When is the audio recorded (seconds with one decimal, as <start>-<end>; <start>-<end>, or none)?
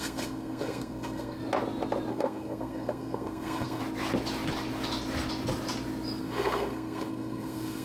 1.4-2.1; 3.8-6.2